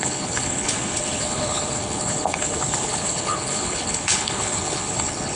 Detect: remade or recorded remade